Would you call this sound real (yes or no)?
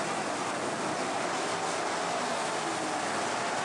yes